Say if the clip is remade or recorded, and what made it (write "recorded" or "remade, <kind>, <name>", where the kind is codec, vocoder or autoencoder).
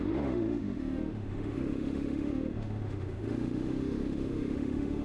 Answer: remade, autoencoder, DAC-VAE